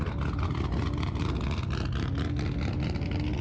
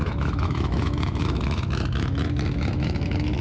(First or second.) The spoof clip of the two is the second